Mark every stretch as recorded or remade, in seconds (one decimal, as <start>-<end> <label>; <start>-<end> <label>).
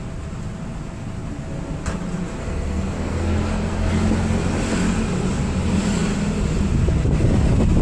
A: 0.0-2.4 recorded; 2.4-3.9 remade; 3.9-7.8 recorded